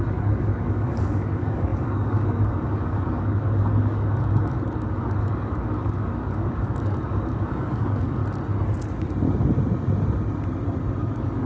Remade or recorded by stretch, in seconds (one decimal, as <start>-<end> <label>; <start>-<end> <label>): 0.0-8.2 remade; 8.2-11.0 recorded; 11.0-11.5 remade